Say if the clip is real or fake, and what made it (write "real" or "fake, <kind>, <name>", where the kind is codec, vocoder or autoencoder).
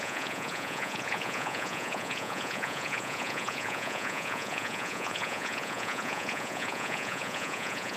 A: fake, vocoder, Vocos